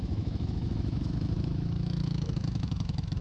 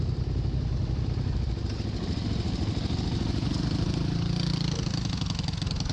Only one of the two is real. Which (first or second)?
second